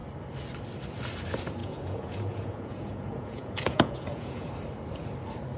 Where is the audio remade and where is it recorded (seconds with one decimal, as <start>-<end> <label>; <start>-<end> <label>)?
0.0-1.6 recorded; 1.6-4.5 remade; 4.5-5.6 recorded

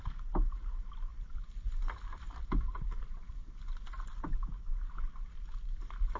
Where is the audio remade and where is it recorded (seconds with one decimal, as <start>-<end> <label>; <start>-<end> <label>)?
0.0-1.1 recorded; 1.1-4.5 remade; 4.5-6.2 recorded

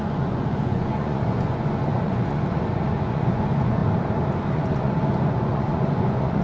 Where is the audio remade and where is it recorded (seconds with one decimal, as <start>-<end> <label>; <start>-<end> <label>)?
0.0-3.8 remade; 3.8-4.4 recorded; 4.4-6.4 remade

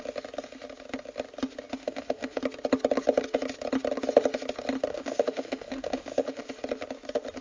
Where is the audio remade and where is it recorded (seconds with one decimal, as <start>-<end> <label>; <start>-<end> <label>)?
0.0-1.8 recorded; 1.8-2.4 remade; 2.4-4.9 recorded; 4.9-6.4 remade; 6.4-7.4 recorded

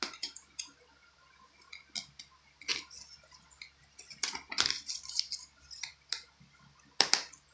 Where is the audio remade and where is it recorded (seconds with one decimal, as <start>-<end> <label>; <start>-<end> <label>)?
0.0-7.5 recorded

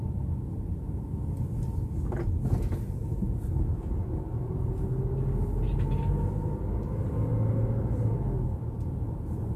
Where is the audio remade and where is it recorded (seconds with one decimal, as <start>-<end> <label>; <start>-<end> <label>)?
0.0-9.6 recorded